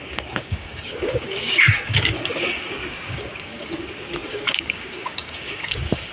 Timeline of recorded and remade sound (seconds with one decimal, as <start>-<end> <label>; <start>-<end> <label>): 0.0-6.1 remade

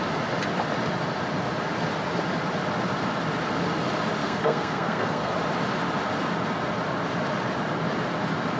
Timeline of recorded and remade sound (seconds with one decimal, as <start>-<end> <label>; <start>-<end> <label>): 0.0-4.2 recorded; 4.2-5.3 remade; 5.3-8.6 recorded

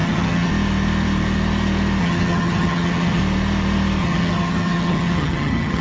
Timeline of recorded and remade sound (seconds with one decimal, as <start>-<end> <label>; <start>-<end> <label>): 0.0-0.5 remade; 0.5-2.0 recorded; 2.0-3.2 remade; 3.2-4.0 recorded; 4.0-5.8 remade

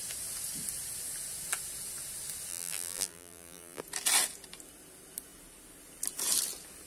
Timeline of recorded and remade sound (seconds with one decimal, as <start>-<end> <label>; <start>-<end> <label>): 0.0-2.5 recorded; 2.5-3.8 remade; 3.8-6.9 recorded

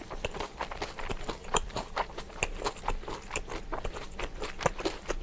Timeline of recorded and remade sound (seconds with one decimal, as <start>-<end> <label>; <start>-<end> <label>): 0.0-1.4 recorded; 1.4-2.1 remade; 2.1-3.7 recorded; 3.7-4.2 remade; 4.2-5.2 recorded

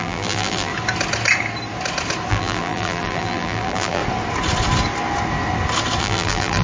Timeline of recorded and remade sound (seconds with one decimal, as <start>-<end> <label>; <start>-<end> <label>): 0.0-0.7 remade; 0.7-2.3 recorded; 2.3-4.0 remade; 4.0-6.0 recorded; 6.0-6.6 remade